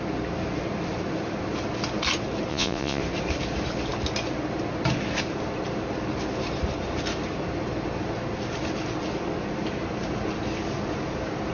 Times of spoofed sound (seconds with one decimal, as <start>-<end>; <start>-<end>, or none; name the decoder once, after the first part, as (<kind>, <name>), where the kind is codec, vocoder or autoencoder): 2.5-3.0 (vocoder, Vocos)